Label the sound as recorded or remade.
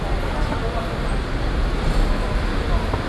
recorded